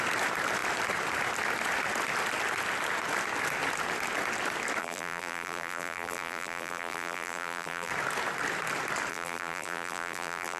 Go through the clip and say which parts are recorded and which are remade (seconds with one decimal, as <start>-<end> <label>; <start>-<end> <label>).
0.0-4.8 recorded; 4.8-7.9 remade; 7.9-9.1 recorded; 9.1-10.6 remade